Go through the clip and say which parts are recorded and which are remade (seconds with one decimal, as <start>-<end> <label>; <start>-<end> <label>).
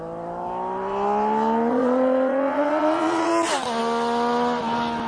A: 0.0-1.7 recorded; 1.7-3.3 remade; 3.3-5.1 recorded